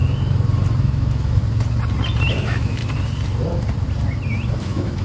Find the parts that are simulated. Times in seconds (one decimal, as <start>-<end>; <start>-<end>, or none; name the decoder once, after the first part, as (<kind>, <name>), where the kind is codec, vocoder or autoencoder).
0.8-1.4 (autoencoder, DAC-VAE); 2.3-2.8; 4.6-5.0